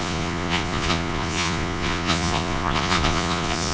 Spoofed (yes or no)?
yes